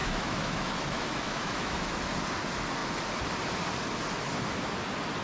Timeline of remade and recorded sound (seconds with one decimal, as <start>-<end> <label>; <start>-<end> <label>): 0.0-2.0 remade; 2.0-5.2 recorded